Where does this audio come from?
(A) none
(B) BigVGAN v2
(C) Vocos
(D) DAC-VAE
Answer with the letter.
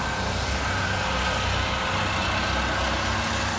A